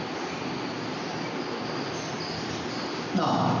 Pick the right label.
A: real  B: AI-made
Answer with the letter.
A